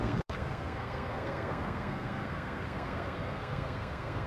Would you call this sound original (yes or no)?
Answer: no